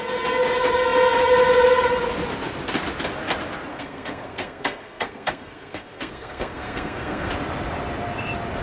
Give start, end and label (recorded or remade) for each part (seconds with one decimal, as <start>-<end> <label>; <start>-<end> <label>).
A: 0.0-3.7 recorded; 3.7-7.3 remade; 7.3-8.6 recorded